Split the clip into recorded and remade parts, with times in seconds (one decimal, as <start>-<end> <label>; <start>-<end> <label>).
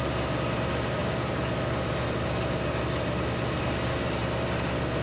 0.0-5.0 recorded